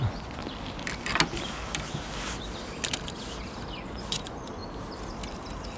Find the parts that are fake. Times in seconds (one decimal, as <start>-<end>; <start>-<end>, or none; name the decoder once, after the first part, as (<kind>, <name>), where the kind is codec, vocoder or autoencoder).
0.0-0.4 (vocoder, Vocos); 3.9-4.6

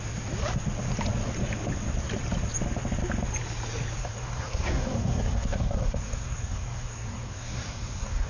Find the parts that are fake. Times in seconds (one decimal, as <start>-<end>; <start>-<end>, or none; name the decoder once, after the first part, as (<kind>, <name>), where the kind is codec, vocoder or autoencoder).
4.0-8.3 (codec, SNAC)

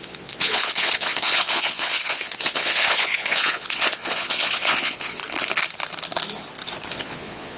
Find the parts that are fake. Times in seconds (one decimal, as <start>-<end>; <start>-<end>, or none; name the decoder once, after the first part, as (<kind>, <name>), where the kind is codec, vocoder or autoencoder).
0.0-5.2 (vocoder, Vocos); 6.9-7.6